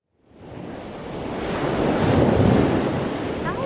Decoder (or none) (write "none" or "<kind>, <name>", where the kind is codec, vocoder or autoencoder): none